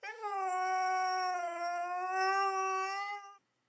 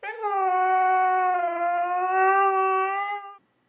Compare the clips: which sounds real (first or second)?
second